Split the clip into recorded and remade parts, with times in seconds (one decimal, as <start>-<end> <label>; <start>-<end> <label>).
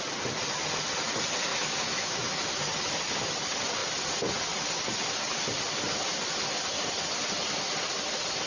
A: 0.0-1.5 recorded; 1.5-2.4 remade; 2.4-8.5 recorded